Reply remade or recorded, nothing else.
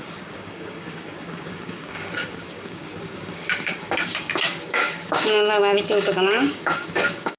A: remade